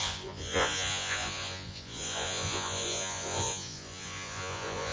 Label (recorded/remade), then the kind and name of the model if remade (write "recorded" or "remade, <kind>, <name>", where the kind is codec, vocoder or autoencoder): remade, vocoder, Vocos